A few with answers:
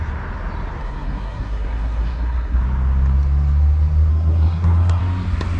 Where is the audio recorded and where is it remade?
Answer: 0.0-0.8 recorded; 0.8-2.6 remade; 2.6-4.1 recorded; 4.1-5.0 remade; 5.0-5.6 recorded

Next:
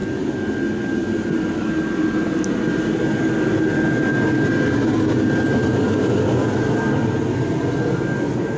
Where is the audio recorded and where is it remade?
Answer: 0.0-8.6 recorded